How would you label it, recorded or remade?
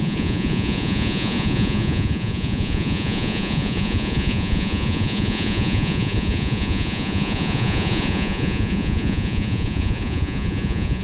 remade